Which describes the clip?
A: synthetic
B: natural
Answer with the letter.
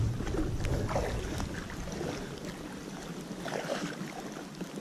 B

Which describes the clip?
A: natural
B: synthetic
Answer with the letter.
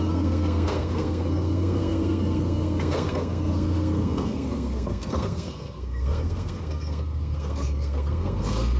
B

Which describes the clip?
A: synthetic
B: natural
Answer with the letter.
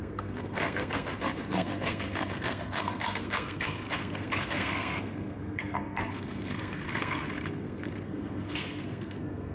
A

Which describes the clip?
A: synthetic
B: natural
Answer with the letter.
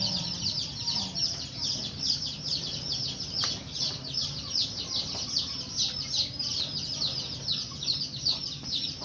B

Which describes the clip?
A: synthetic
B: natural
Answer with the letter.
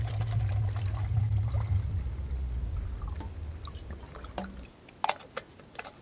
B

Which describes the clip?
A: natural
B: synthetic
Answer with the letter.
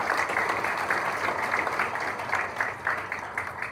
A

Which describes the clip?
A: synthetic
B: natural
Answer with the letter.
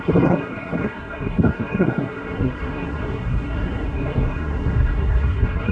A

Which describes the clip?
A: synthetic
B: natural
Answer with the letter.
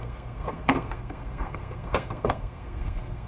A